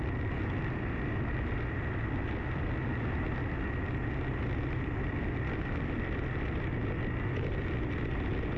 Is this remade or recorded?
recorded